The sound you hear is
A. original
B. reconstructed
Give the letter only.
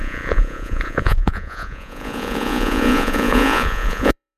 B